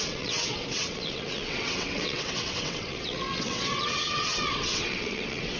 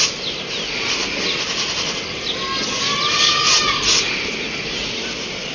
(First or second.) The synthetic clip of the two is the first